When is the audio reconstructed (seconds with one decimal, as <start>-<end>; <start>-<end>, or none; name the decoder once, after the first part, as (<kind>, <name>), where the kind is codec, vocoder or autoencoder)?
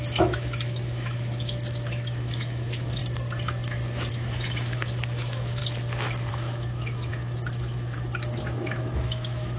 0.0-3.0 (autoencoder, DAC-VAE); 4.1-5.6; 6.3-9.6